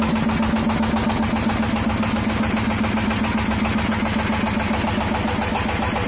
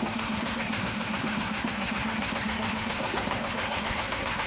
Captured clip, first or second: first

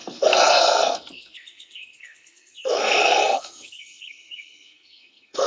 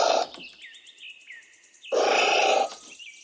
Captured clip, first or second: second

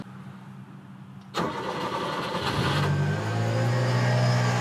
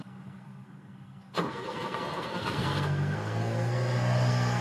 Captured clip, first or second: first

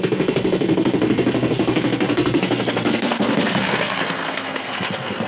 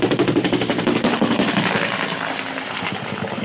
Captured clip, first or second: second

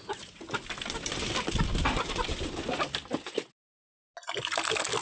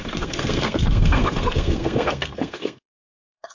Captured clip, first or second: first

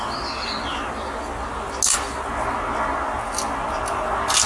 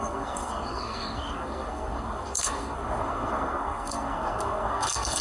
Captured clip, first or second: first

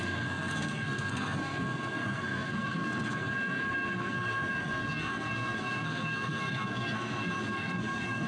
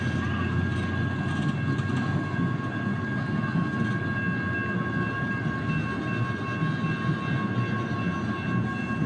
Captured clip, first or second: second